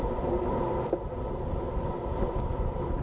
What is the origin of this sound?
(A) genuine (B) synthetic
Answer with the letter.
B